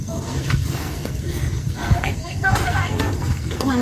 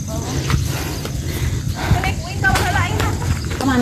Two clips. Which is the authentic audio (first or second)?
second